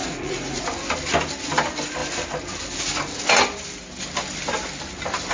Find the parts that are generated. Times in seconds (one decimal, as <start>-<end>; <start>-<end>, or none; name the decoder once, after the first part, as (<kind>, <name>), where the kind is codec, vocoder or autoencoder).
0.0-0.6 (vocoder, Vocos)

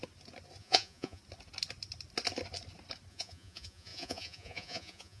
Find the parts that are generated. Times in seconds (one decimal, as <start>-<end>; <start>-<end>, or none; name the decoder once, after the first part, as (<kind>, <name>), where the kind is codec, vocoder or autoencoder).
0.6-1.2 (vocoder, Vocos); 3.1-5.2

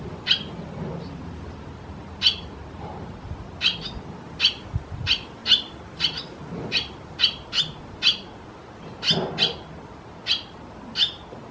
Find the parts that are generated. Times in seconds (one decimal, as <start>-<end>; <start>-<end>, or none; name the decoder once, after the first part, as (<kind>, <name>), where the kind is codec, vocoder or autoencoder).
none

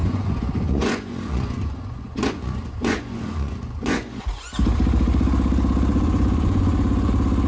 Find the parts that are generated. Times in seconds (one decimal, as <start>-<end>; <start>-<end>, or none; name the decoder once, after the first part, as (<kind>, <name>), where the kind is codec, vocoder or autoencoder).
0.0-4.5 (vocoder, Vocos); 5.9-7.1